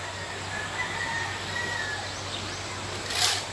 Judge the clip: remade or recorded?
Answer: recorded